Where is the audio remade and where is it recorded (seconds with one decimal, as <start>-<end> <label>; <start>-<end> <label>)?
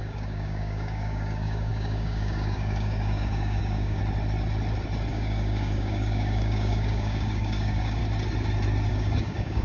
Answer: 0.0-4.0 remade; 4.0-5.1 recorded; 5.1-8.0 remade; 8.0-8.9 recorded; 8.9-9.6 remade